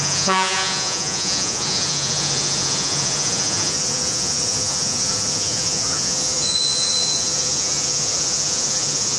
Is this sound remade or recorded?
remade